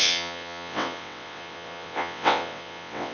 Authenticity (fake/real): fake